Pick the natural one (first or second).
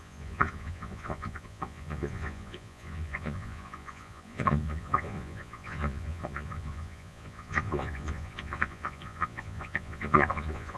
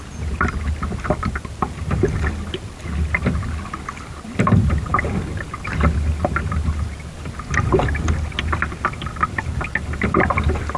second